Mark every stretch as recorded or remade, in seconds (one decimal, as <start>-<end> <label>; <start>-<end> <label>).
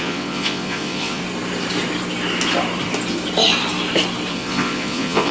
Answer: 0.0-1.2 remade; 1.2-4.3 recorded; 4.3-5.3 remade